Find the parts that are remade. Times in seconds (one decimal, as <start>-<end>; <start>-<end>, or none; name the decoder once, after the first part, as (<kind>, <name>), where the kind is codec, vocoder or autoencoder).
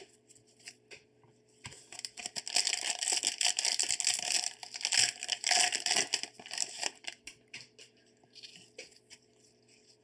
none